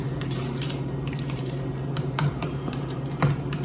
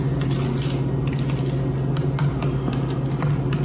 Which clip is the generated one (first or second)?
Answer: first